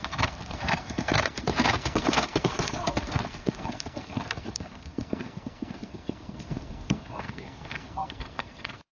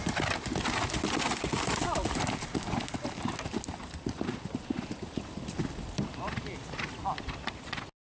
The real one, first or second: second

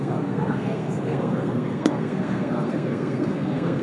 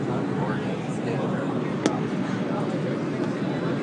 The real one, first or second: second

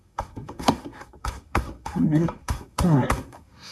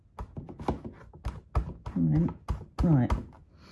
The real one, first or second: second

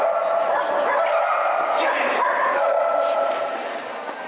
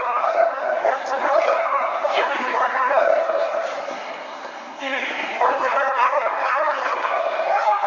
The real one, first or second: first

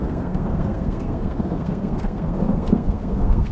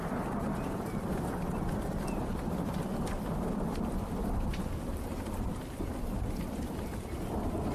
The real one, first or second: second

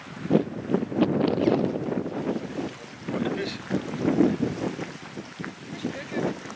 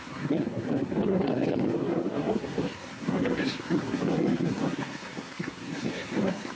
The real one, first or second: first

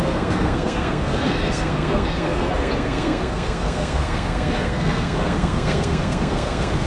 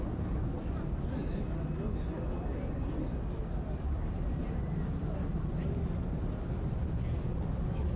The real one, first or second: second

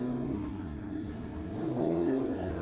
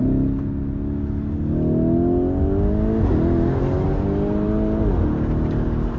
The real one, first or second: second